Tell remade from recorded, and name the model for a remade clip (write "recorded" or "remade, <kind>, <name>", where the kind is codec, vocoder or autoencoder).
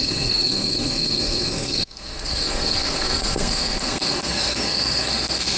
remade, codec, SNAC